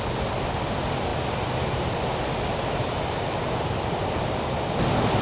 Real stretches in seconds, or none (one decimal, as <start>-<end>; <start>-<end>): 0.0-5.2

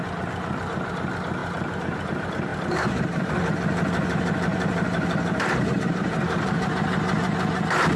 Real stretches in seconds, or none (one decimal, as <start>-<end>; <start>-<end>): 0.0-1.4; 2.1-2.5; 3.3-4.5; 6.7-8.0

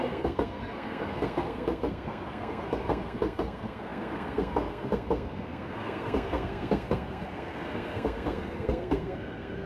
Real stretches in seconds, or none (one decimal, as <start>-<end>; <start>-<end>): none

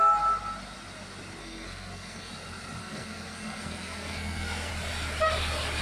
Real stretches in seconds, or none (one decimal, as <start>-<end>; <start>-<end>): 0.0-1.4; 2.3-2.8; 4.7-5.8

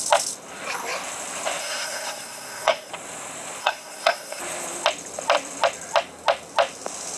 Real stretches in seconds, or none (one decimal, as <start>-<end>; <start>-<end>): 0.0-1.6; 2.9-3.6; 4.4-7.2

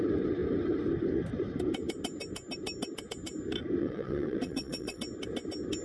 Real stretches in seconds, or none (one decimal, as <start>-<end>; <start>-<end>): 0.0-3.8; 5.0-5.8